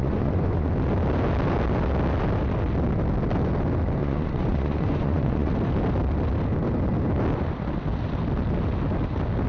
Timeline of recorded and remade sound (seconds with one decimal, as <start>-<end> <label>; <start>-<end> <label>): 0.0-0.7 remade; 0.7-4.0 recorded; 4.0-5.5 remade; 5.5-9.5 recorded